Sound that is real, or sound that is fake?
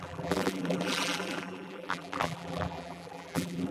fake